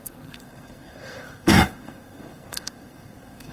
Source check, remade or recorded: remade